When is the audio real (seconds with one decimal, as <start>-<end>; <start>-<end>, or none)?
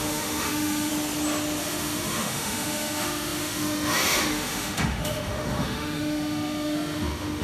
0.9-1.6